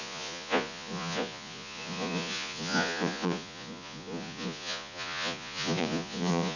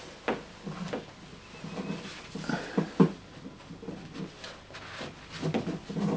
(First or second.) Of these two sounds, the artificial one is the first